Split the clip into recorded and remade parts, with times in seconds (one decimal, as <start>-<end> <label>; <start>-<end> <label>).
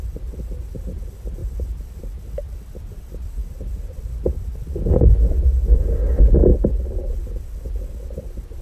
0.0-8.6 recorded